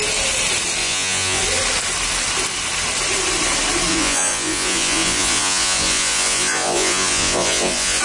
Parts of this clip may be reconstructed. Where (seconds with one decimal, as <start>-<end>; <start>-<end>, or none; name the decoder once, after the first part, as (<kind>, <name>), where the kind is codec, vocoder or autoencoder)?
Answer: 0.8-1.4 (vocoder, Vocos); 3.9-8.0